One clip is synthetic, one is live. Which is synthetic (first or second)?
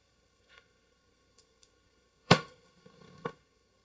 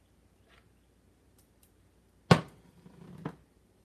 first